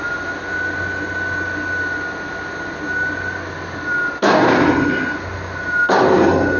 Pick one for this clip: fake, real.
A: real